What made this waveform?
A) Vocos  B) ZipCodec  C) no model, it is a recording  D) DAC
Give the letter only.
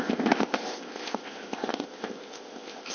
B